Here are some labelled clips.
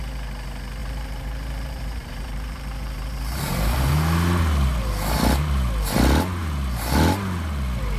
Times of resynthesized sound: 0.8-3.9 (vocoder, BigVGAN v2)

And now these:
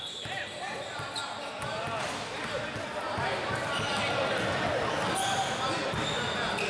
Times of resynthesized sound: none

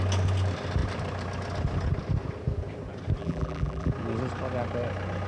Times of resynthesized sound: 3.2-3.9 (vocoder, BigVGAN v2)

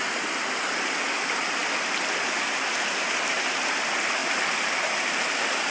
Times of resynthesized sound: none